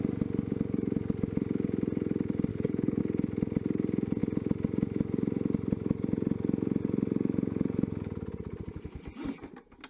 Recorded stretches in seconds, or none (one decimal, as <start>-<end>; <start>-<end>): 0.0-2.5; 3.0-9.9